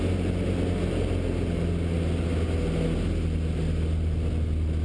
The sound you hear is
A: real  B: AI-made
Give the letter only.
A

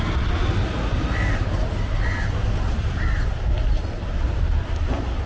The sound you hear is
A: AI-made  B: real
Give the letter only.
B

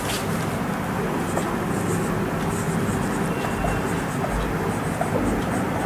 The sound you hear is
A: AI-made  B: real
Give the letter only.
B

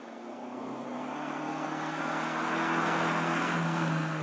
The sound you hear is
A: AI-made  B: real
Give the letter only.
A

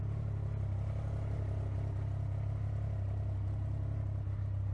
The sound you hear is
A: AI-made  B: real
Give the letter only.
B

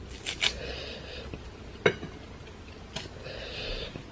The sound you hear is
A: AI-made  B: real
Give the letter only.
B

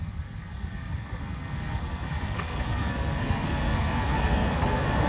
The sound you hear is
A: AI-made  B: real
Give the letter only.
A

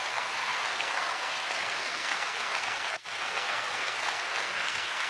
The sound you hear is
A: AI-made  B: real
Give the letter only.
A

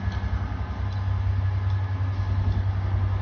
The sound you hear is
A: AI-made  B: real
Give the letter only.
B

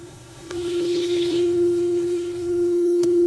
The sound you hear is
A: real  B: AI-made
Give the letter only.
B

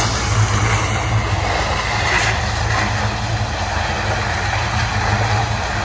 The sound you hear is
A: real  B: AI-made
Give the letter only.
A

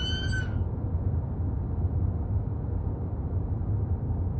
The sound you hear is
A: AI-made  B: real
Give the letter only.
B